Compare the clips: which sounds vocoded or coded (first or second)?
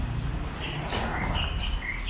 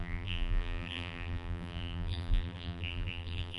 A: second